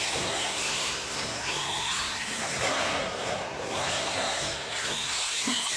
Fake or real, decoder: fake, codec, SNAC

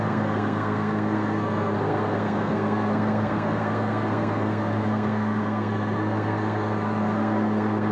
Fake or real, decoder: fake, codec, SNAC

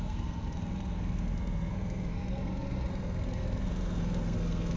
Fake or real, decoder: fake, codec, SNAC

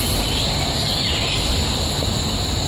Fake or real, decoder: real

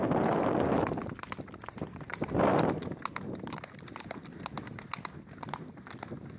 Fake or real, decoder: real